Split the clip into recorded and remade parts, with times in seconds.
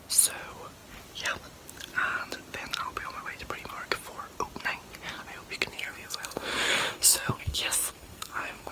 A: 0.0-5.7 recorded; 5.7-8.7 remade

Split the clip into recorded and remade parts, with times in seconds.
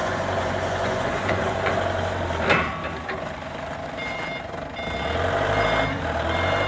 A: 0.0-1.7 remade; 1.7-6.7 recorded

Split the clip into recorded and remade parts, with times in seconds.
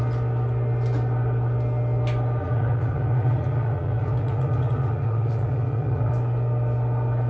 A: 0.0-2.4 recorded; 2.4-6.1 remade; 6.1-7.3 recorded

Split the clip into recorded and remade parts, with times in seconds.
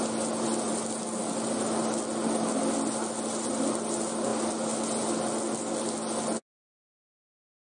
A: 0.0-7.6 recorded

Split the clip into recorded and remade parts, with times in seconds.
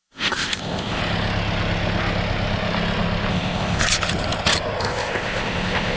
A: 0.0-1.0 remade; 1.0-3.3 recorded; 3.3-3.8 remade; 3.8-4.8 recorded; 4.8-6.0 remade